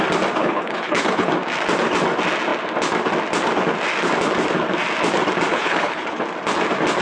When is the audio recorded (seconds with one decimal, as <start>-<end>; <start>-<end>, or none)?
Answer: 0.0-0.4; 1.3-5.5; 6.2-7.0